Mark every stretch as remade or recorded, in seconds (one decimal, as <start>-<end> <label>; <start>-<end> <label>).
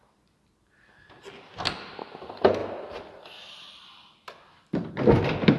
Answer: 0.0-5.6 recorded